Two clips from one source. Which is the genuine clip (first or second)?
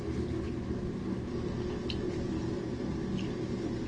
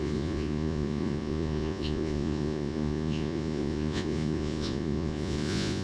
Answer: first